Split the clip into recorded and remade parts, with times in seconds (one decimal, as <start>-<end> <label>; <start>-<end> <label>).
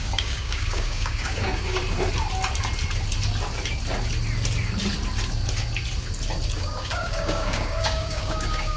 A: 0.0-1.8 remade; 1.8-6.6 recorded; 6.6-8.8 remade